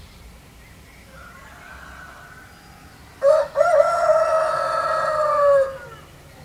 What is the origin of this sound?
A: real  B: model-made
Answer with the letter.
A